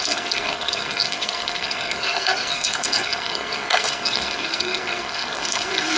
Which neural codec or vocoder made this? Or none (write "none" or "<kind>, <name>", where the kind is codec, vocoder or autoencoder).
codec, SNAC